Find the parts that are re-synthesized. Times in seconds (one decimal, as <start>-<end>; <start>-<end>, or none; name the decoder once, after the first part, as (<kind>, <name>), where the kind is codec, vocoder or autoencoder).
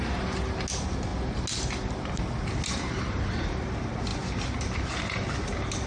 none